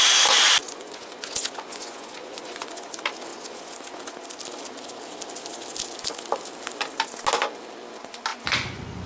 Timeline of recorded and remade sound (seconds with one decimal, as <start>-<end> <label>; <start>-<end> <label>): 0.0-0.6 recorded; 0.6-2.9 remade; 2.9-3.3 recorded; 3.3-4.0 remade; 4.0-8.3 recorded; 8.3-9.1 remade